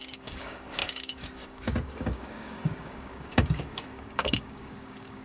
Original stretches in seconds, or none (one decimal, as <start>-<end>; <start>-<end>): none

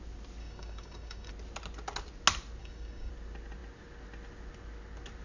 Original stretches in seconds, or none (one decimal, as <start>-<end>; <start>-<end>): 0.0-0.4; 1.3-2.6; 3.1-5.2

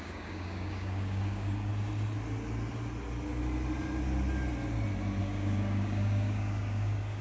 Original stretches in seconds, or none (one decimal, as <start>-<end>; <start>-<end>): 1.7-5.2

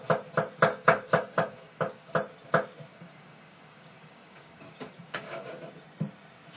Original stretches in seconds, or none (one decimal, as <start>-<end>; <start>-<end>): 0.0-0.7; 2.1-2.9; 5.6-6.6

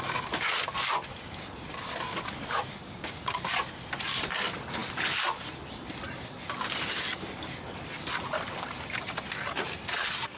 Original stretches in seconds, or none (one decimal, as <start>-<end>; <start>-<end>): 0.0-2.8; 3.4-10.4